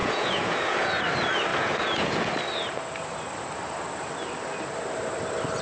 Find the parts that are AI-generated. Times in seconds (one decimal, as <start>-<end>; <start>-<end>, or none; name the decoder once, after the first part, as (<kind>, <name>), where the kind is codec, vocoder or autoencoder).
0.0-1.0 (vocoder, Vocos); 1.5-2.3